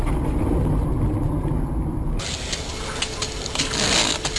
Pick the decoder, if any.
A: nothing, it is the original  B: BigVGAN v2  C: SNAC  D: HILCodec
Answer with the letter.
A